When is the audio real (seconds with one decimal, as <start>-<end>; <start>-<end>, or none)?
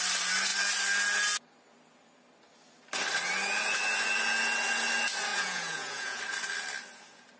0.0-5.3; 6.2-7.4